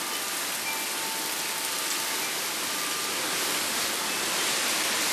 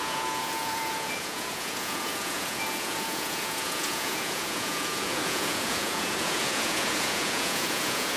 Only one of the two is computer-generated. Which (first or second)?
second